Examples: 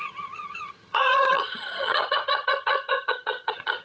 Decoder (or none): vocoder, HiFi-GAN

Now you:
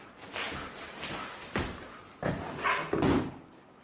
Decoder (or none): none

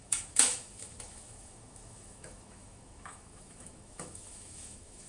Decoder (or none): autoencoder, DAC-VAE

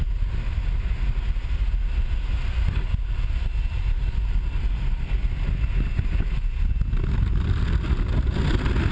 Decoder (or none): none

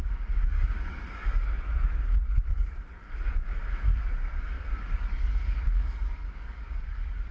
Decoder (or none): codec, DAC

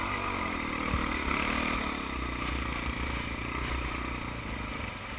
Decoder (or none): none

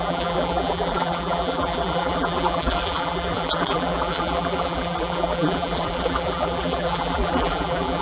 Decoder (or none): vocoder, BigVGAN v2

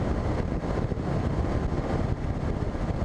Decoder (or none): none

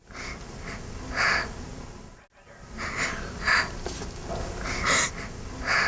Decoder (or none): none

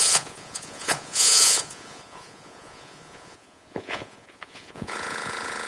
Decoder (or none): vocoder, Vocos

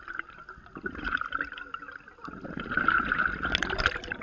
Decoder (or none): none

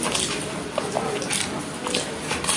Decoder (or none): none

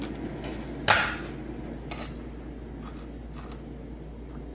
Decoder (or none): none